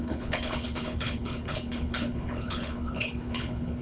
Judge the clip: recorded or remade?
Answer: remade